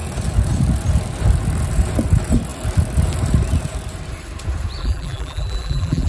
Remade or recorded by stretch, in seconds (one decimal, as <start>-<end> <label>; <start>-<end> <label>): 0.0-4.8 recorded; 4.8-6.1 remade